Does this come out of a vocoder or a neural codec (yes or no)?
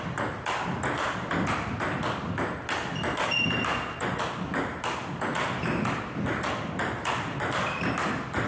no